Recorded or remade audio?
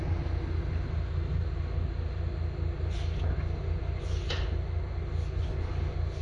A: recorded